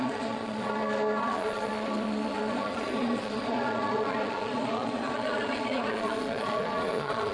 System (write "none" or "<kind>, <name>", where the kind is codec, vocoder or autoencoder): vocoder, Vocos